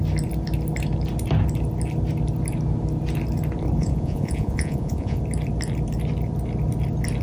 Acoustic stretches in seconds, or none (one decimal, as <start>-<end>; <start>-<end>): 0.0-3.8; 5.2-7.2